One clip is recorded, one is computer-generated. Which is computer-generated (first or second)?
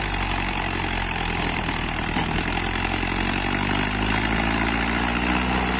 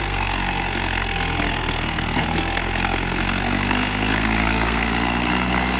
second